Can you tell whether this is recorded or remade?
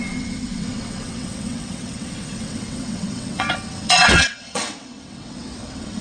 remade